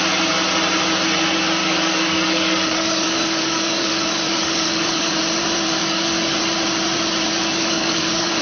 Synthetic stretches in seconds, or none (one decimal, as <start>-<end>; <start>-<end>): 1.6-5.2; 5.8-6.4; 7.3-8.4